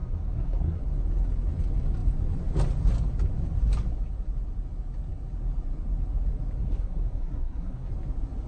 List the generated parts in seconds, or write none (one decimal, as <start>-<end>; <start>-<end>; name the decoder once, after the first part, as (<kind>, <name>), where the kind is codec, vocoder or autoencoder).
0.0-0.8 (codec, SNAC); 6.6-7.9